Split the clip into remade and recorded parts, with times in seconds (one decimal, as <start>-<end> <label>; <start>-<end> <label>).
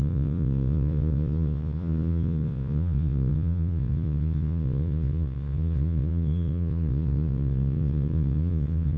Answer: 0.0-9.0 remade